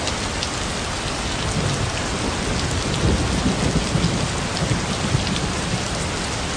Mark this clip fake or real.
real